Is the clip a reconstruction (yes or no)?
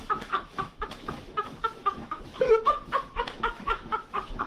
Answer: yes